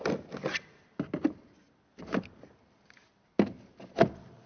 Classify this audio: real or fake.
real